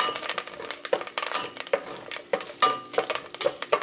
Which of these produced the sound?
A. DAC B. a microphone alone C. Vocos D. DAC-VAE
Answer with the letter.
B